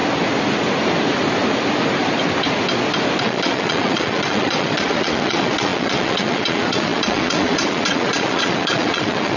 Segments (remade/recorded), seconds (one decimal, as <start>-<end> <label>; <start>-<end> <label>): 0.0-3.2 recorded; 3.2-9.4 remade